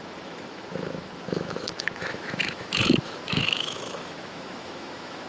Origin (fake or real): fake